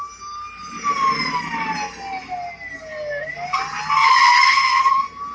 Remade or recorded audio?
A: recorded